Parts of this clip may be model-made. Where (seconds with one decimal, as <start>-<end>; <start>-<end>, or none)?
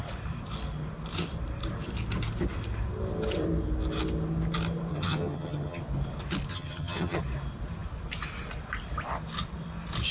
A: 4.9-5.8; 6.5-7.2